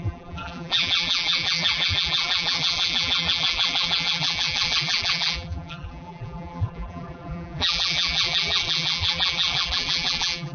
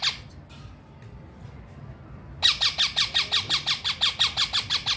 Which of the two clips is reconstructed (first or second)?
first